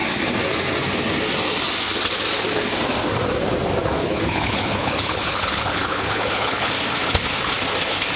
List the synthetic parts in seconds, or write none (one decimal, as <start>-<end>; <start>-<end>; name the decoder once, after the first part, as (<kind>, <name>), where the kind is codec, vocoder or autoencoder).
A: 4.0-6.7 (codec, HILCodec)